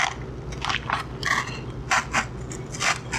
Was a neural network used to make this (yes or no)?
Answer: no